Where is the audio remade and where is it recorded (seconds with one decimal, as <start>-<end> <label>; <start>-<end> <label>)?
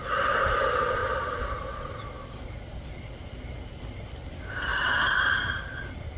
0.0-1.0 remade; 1.0-3.0 recorded; 3.0-6.2 remade